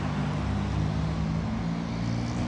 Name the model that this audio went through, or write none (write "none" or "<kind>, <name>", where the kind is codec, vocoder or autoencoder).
none